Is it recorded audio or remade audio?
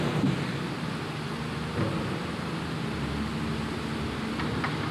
recorded